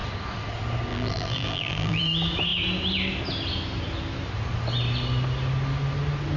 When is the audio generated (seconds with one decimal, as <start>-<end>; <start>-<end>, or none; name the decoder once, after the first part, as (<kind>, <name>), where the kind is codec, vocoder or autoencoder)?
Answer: 0.9-2.0 (vocoder, BigVGAN v2)